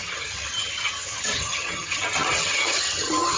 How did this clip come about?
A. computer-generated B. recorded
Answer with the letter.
A